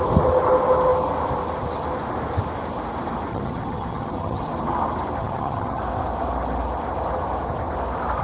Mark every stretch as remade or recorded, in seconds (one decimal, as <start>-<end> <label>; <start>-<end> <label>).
0.0-3.3 recorded; 3.3-4.4 remade; 4.4-5.2 recorded; 5.2-5.8 remade; 5.8-8.2 recorded